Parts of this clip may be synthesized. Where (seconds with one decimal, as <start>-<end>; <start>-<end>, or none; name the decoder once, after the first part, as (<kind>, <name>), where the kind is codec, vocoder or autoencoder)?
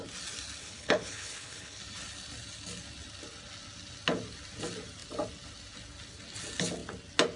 0.6-1.8 (codec, HILCodec)